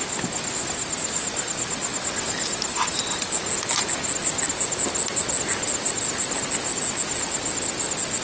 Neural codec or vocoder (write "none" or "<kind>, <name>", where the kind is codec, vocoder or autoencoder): none